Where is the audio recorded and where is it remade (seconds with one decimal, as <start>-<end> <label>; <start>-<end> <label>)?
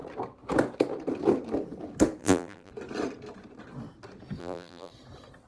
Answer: 0.0-2.2 recorded; 2.2-2.7 remade; 2.7-4.4 recorded; 4.4-4.9 remade; 4.9-5.5 recorded